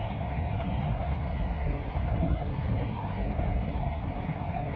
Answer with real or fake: fake